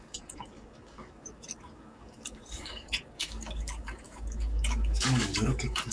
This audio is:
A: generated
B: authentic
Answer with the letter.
A